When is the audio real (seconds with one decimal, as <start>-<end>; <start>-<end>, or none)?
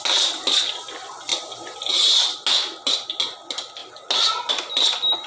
0.0-1.3; 1.9-5.3